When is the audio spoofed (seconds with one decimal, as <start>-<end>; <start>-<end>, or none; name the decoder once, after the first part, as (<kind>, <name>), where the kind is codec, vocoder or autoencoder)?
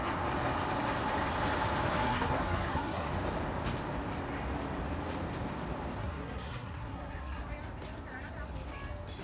1.9-3.1 (codec, SNAC); 6.0-7.4